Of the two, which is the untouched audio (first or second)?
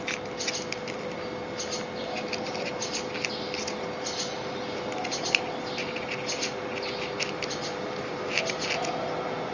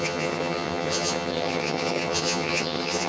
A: first